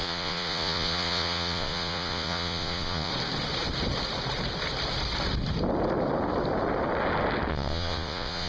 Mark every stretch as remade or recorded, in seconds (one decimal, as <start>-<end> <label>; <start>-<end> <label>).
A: 0.0-3.1 remade; 3.1-7.5 recorded; 7.5-8.5 remade